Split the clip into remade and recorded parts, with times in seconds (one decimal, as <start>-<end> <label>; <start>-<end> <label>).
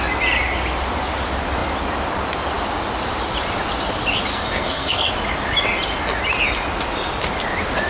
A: 0.0-4.3 recorded; 4.3-5.1 remade; 5.1-7.9 recorded